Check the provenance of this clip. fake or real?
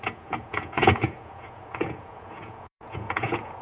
fake